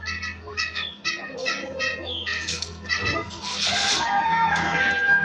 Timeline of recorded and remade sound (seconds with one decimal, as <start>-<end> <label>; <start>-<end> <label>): 0.0-5.2 remade